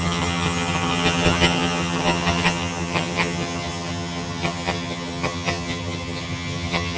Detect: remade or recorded remade